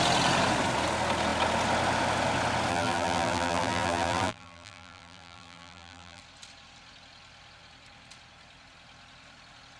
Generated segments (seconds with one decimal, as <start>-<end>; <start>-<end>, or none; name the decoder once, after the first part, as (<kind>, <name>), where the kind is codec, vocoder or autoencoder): 2.7-6.2 (vocoder, BigVGAN v2)